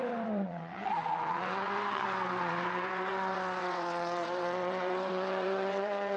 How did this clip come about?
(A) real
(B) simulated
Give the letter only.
B